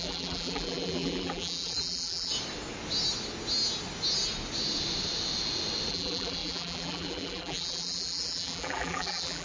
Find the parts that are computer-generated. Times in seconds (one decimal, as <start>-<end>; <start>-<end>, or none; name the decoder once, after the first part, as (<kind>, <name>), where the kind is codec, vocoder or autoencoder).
0.0-2.3 (vocoder, BigVGAN v2); 5.9-9.4